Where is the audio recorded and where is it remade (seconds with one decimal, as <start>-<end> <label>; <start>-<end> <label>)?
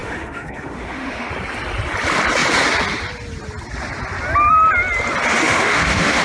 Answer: 0.0-1.3 remade; 1.3-5.4 recorded; 5.4-6.2 remade